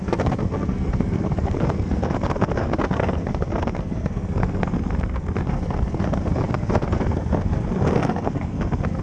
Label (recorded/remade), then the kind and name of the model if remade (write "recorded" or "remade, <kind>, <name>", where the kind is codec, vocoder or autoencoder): remade, codec, SNAC